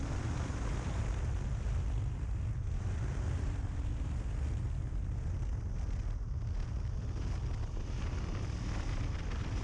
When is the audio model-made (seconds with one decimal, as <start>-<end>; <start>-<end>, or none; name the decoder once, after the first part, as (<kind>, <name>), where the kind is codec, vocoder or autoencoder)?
0.0-3.9 (vocoder, BigVGAN v2); 8.9-9.6